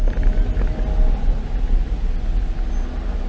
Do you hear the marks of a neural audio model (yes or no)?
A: no